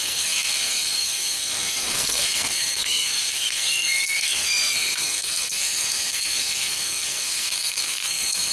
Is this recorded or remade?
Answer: remade